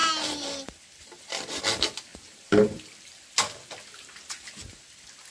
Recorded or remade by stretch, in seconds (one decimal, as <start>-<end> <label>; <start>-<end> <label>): 0.0-5.3 recorded